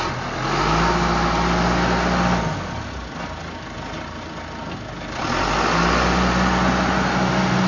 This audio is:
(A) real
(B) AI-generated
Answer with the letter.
A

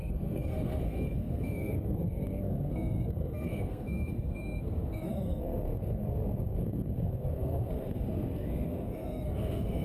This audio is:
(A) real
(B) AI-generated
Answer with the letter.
B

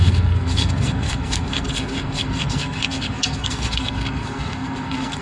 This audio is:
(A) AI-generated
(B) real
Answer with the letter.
A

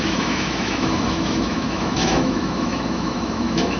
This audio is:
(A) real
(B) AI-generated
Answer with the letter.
B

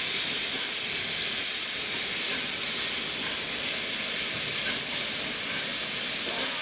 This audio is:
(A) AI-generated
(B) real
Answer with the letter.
B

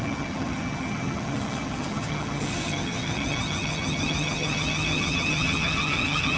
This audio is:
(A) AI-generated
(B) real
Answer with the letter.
A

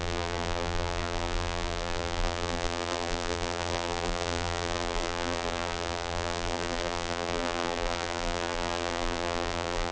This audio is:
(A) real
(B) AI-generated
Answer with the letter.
B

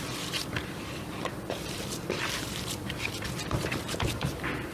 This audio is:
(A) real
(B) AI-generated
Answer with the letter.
B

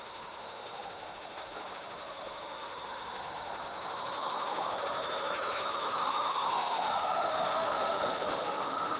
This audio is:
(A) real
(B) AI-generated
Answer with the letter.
B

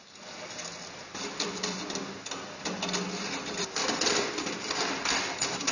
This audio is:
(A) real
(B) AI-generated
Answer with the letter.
A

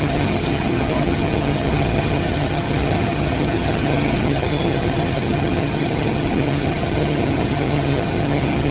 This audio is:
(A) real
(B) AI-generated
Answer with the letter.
B